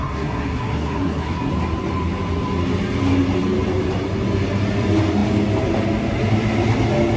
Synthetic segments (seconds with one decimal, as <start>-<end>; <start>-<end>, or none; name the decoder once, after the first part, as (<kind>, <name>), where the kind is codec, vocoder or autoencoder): 0.0-1.5 (codec, SNAC)

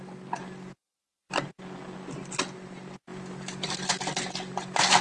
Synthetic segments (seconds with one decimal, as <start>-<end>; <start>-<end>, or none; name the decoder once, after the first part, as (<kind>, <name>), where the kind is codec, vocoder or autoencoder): none